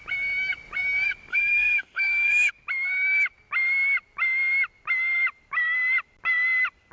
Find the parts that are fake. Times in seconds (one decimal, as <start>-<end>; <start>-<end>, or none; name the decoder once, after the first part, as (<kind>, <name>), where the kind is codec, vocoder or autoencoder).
1.3-2.5 (autoencoder, DAC-VAE)